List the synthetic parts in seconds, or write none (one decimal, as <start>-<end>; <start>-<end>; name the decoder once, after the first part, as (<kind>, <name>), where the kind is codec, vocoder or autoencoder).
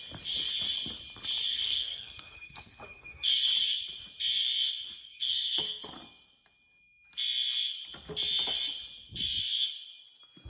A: 1.5-3.3 (codec, SNAC); 5.0-5.9